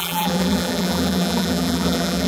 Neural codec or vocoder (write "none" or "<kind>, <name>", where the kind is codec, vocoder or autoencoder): vocoder, BigVGAN v2